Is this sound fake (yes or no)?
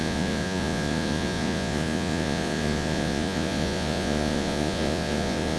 yes